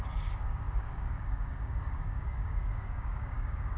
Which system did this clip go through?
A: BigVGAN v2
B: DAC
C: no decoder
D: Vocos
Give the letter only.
B